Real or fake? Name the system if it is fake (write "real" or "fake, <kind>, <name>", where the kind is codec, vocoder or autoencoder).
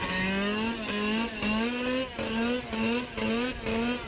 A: real